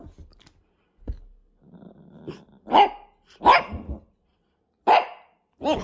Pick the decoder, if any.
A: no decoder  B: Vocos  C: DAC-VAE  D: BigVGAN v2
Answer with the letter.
A